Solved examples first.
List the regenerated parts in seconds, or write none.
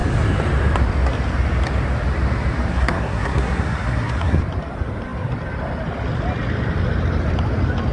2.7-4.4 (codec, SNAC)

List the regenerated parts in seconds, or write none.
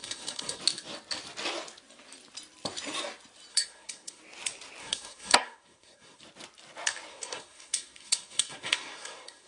0.0-0.6 (codec, SNAC); 3.5-4.2; 4.8-6.2; 7.1-9.5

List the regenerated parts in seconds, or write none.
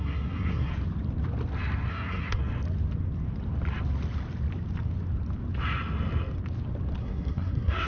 0.0-0.7 (codec, SNAC); 1.9-2.4; 7.0-7.9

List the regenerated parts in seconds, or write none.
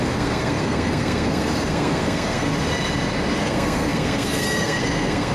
0.0-2.5 (codec, SNAC); 3.4-5.3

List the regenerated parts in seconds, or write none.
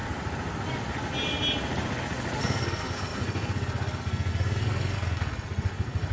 2.4-6.1 (codec, SNAC)